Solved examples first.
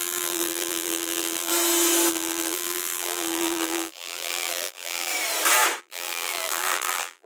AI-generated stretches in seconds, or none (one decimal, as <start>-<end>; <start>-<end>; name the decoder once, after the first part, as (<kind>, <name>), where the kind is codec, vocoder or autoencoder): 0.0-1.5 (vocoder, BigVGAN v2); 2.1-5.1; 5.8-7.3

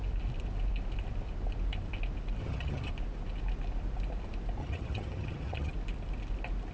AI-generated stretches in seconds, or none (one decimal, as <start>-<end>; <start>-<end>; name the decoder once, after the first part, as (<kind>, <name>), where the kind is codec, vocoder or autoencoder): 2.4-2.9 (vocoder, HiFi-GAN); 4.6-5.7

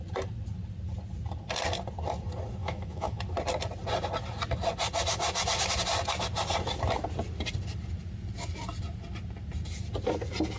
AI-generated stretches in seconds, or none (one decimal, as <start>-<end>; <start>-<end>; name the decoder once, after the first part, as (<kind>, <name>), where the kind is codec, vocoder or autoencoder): 2.6-3.2 (autoencoder, DAC-VAE)